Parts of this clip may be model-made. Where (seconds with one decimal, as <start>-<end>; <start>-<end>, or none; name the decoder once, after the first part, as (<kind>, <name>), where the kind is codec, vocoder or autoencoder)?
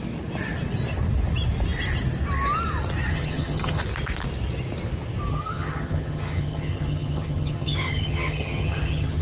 3.1-3.8 (vocoder, HiFi-GAN); 5.3-9.2